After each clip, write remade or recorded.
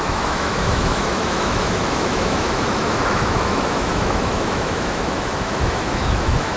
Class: remade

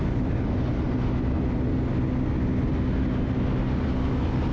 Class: recorded